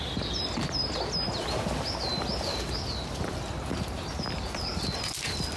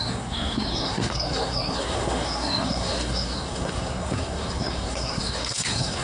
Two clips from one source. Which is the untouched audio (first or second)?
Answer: first